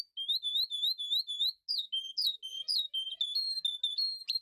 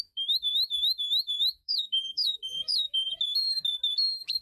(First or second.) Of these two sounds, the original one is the first